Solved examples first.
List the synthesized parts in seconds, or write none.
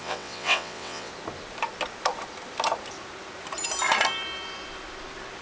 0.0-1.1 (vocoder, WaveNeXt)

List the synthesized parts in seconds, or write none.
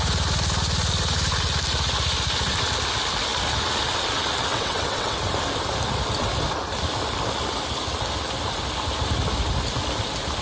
4.5-5.2 (vocoder, WaveNeXt)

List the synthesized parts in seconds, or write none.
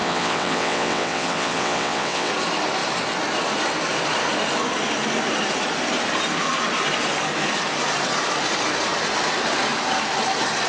0.0-2.3 (vocoder, WaveNeXt)